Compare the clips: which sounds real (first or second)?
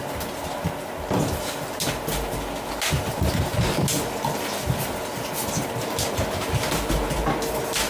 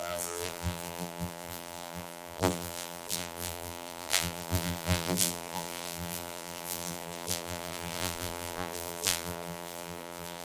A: first